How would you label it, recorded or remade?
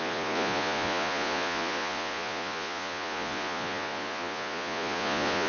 remade